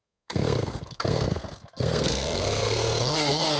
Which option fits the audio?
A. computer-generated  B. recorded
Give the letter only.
A